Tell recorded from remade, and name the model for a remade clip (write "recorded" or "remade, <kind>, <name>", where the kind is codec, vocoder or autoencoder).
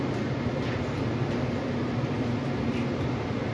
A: recorded